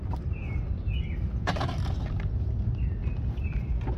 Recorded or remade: recorded